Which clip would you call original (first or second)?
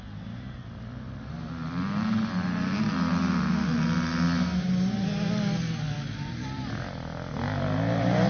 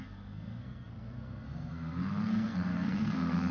first